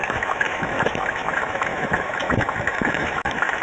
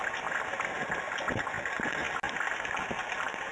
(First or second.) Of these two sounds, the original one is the second